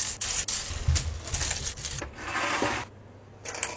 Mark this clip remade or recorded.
recorded